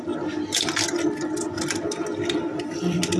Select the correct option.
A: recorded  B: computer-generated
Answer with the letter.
A